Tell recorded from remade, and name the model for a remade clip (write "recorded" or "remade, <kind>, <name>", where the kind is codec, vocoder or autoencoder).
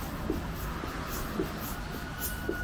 recorded